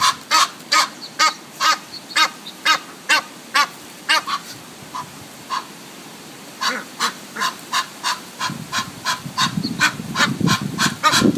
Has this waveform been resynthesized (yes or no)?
yes